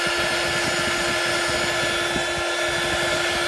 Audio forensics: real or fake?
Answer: real